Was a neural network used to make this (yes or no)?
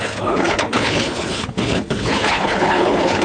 yes